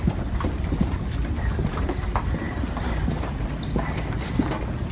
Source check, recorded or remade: recorded